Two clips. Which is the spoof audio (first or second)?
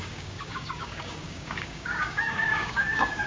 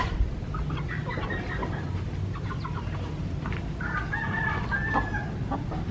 first